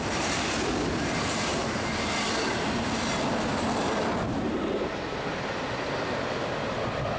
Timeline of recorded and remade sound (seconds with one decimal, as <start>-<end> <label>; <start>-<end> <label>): 0.0-7.2 recorded